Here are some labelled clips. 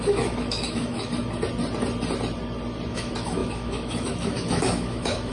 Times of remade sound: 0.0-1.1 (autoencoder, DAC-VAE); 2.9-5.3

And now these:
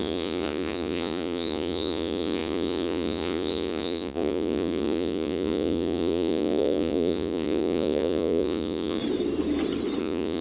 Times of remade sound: 0.0-9.0 (vocoder, Vocos); 10.0-10.4

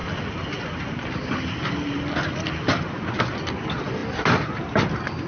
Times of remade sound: none

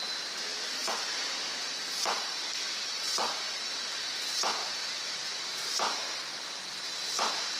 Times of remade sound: 0.8-4.0 (vocoder, BigVGAN v2); 4.6-7.6

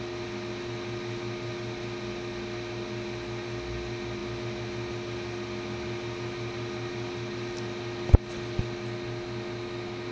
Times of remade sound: none